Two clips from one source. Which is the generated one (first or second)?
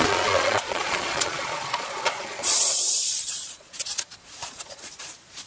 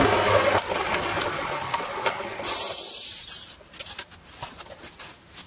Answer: first